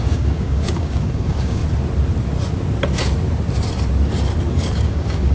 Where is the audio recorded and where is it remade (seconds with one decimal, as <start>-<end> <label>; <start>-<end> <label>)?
0.0-1.6 remade; 1.6-4.5 recorded; 4.5-5.3 remade